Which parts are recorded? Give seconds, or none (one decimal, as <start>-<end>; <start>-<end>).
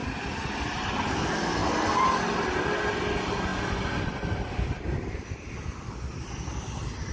0.0-7.1